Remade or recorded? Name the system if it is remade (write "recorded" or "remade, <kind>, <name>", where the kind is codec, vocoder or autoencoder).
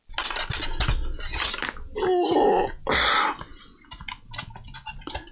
recorded